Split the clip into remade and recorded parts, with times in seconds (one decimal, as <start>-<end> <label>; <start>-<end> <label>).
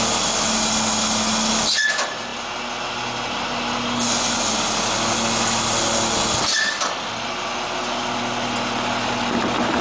0.0-9.8 recorded